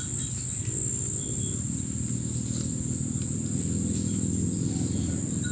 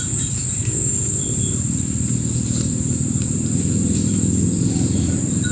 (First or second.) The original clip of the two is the first